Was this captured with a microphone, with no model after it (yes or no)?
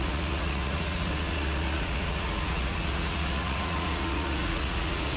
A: no